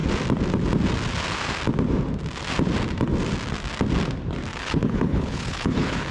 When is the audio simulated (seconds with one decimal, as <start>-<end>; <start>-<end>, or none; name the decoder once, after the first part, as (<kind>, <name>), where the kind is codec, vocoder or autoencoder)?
4.5-6.1 (codec, HILCodec)